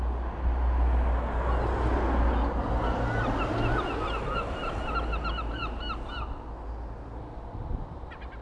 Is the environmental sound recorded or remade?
recorded